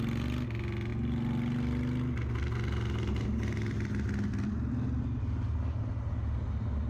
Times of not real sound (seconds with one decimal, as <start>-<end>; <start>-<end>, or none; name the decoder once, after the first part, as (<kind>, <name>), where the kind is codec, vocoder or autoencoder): none